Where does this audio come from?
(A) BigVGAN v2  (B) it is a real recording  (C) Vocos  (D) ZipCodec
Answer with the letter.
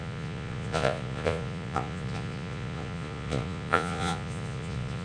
C